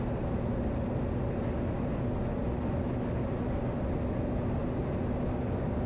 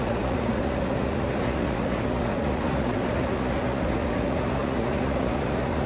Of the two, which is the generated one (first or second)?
second